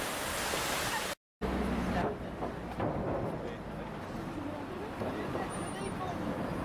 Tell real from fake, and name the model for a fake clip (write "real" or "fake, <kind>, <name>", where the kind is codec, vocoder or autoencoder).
real